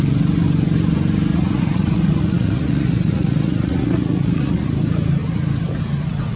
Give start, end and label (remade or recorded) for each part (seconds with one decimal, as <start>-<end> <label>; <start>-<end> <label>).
0.0-1.3 recorded; 1.3-4.7 remade; 4.7-6.4 recorded